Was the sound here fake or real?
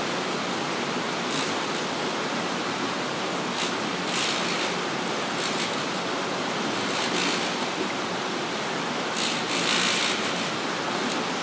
real